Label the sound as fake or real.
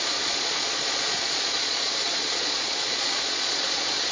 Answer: fake